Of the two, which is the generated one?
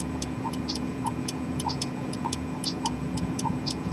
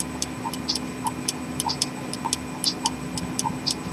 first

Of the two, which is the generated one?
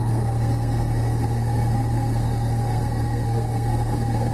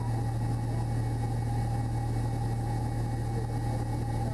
first